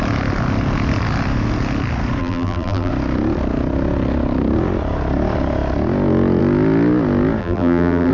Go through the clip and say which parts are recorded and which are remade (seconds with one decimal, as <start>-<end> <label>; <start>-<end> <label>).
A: 0.0-2.2 recorded; 2.2-2.9 remade; 2.9-7.4 recorded; 7.4-8.1 remade